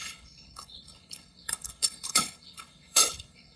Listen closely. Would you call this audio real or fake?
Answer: fake